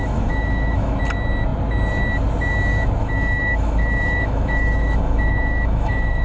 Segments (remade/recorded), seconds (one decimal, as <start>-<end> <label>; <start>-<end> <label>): 0.0-1.0 remade; 1.0-3.0 recorded; 3.0-6.2 remade